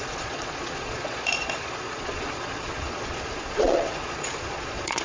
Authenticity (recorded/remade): remade